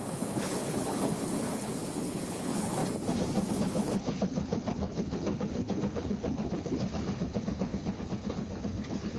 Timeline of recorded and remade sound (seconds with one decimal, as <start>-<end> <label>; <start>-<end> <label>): 0.0-2.8 remade; 2.8-3.5 recorded; 3.5-9.2 remade